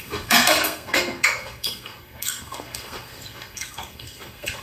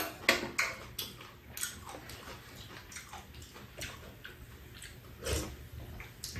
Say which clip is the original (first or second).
second